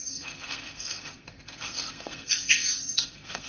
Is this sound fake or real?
fake